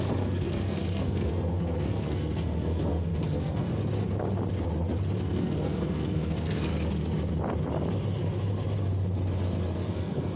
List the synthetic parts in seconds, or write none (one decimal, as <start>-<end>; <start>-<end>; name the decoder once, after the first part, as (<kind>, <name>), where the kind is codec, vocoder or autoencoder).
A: 0.0-3.7 (codec, SNAC); 5.2-6.7; 9.9-10.4